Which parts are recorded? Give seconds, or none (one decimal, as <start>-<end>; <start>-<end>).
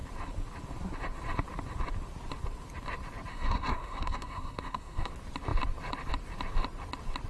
0.0-3.3; 5.1-7.3